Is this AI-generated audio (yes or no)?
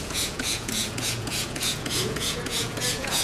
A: yes